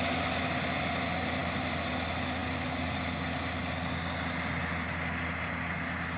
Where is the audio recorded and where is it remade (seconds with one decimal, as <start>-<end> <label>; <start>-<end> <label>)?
0.0-6.2 recorded